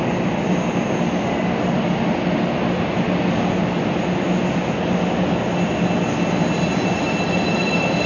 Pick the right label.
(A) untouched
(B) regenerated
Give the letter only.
A